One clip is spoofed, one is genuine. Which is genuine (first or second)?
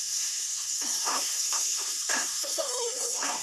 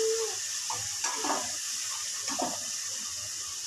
second